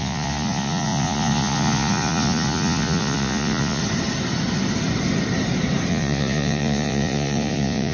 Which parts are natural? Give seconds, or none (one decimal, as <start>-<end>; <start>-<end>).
3.8-5.9